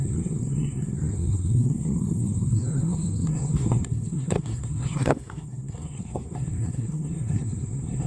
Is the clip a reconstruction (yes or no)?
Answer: yes